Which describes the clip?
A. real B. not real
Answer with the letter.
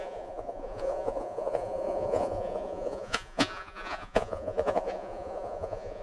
B